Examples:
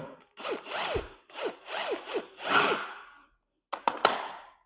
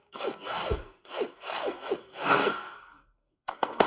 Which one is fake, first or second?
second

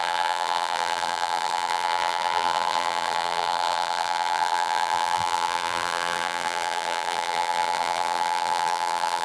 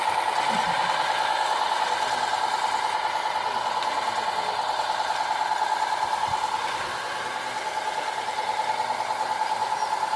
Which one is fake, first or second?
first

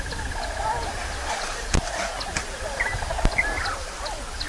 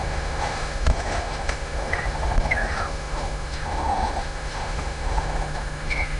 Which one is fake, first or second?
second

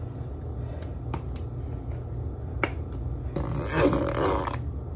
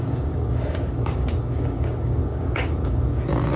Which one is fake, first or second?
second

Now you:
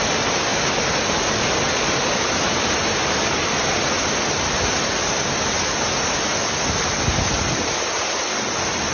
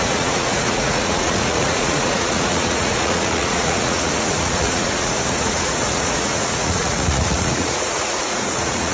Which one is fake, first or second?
second